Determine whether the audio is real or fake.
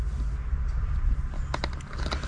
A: real